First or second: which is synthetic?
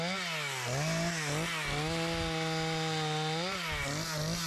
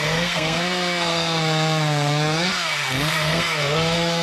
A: second